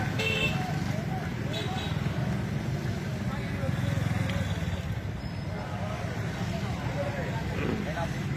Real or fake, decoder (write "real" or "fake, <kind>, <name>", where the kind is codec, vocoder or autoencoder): real